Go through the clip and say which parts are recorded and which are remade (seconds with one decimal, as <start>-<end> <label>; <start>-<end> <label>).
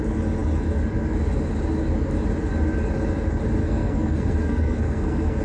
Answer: 0.0-3.6 recorded; 3.6-5.4 remade